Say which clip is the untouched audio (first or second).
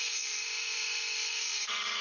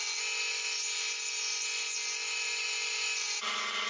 second